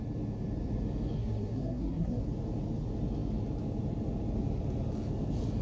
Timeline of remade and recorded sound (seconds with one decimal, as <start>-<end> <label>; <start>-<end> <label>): 0.0-1.2 recorded; 1.2-2.2 remade; 2.2-5.6 recorded